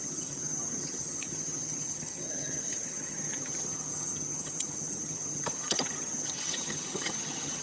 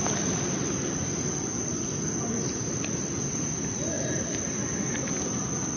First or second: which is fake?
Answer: first